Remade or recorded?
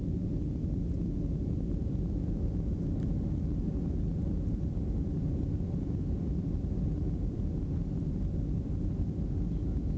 recorded